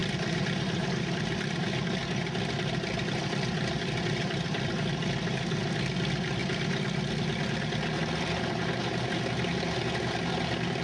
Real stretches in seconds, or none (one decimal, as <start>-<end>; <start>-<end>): 1.6-2.0; 5.0-6.4; 9.0-10.8